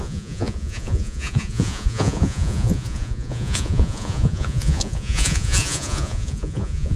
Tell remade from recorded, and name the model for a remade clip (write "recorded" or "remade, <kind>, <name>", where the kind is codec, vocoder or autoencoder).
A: remade, vocoder, Vocos